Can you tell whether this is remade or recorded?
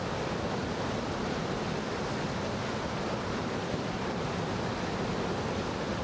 recorded